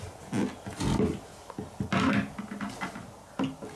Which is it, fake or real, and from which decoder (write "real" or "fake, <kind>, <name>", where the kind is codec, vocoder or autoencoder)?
real